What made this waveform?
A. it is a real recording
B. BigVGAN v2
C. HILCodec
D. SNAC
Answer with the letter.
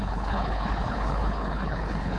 C